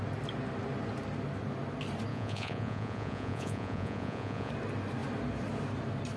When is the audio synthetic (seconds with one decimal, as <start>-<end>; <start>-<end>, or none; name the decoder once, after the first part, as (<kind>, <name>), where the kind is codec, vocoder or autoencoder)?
2.1-4.5 (vocoder, Vocos)